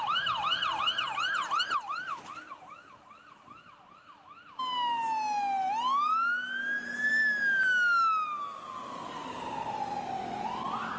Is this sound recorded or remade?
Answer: recorded